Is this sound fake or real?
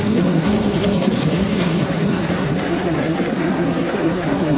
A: fake